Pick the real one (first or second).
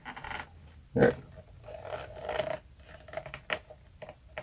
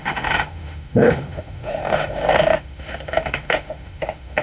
first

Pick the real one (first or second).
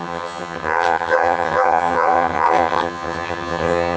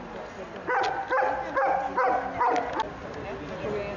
second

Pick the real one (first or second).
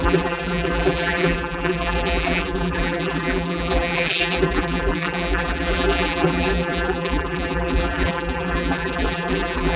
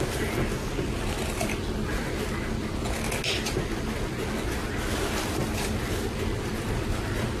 second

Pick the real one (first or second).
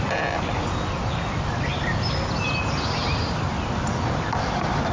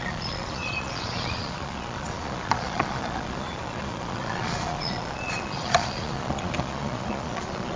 first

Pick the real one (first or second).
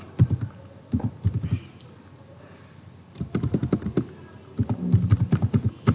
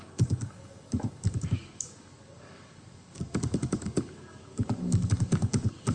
first